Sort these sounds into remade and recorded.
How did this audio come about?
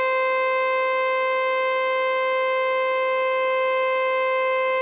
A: recorded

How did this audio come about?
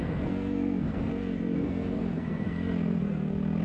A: remade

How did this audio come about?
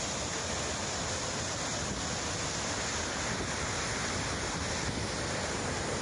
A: recorded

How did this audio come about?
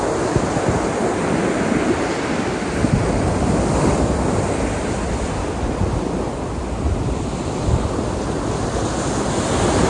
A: recorded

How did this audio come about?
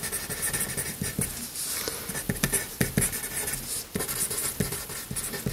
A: recorded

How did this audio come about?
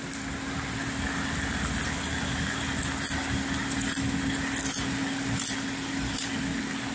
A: recorded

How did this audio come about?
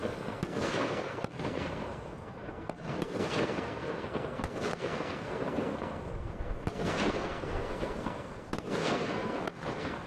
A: remade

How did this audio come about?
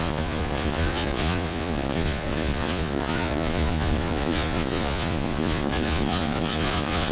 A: remade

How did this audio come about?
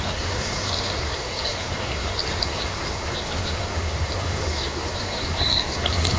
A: remade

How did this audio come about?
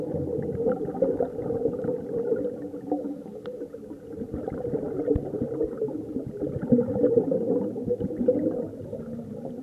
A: recorded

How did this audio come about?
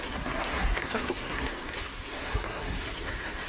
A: remade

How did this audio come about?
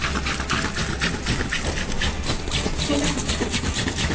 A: recorded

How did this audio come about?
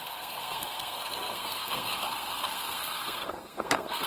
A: remade